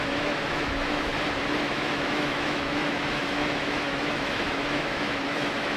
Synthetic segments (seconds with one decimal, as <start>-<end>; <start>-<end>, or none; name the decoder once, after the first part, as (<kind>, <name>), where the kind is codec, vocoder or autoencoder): 0.0-1.1 (autoencoder, DAC-VAE); 1.6-5.8